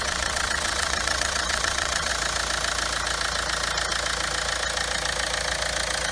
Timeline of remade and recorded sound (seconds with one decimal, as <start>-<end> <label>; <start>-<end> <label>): 0.0-2.1 remade; 2.1-6.1 recorded